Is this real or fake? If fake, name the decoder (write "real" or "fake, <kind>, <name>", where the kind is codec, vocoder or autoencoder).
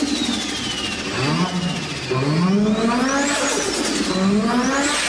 real